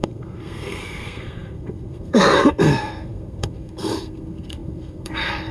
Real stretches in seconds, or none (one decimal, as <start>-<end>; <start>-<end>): none